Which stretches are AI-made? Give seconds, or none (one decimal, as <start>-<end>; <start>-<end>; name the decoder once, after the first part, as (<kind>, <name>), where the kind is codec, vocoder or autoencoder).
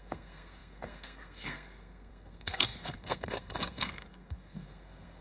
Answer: 0.0-5.2 (codec, SNAC)